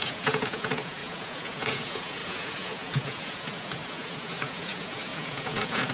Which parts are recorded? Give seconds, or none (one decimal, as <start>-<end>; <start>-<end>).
none